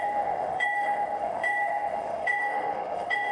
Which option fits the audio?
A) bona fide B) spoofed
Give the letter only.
B